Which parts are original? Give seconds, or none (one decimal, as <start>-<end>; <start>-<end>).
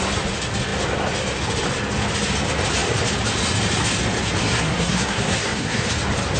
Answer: 0.0-4.4; 5.9-6.4